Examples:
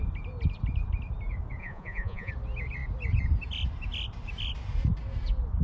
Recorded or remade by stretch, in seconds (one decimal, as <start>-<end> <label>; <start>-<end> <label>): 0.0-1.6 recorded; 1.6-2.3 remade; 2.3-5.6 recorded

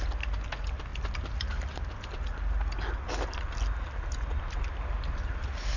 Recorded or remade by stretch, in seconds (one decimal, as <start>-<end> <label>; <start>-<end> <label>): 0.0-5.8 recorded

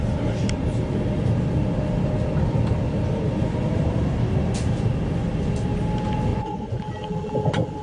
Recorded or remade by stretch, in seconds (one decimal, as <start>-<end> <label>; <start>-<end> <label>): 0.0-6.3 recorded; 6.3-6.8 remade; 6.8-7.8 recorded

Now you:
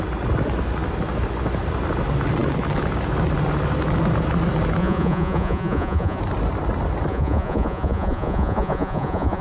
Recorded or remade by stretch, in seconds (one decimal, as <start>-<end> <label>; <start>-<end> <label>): 0.0-4.8 recorded; 4.8-6.2 remade; 6.2-7.1 recorded; 7.1-9.4 remade

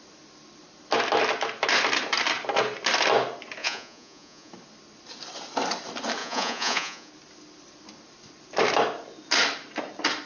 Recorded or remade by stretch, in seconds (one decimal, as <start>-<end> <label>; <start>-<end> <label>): 0.0-3.6 recorded; 3.6-4.5 remade; 4.5-6.2 recorded; 6.2-7.1 remade; 7.1-10.3 recorded

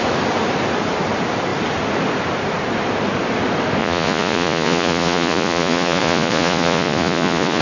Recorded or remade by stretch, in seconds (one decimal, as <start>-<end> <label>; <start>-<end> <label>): 0.0-3.8 recorded; 3.8-7.6 remade

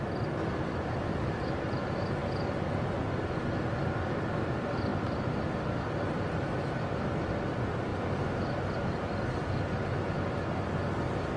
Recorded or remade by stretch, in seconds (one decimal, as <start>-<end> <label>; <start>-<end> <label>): 0.0-11.4 recorded

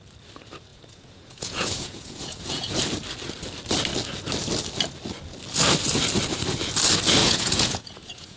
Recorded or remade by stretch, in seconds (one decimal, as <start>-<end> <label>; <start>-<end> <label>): 0.0-0.7 recorded; 0.7-2.8 remade; 2.8-7.2 recorded; 7.2-8.4 remade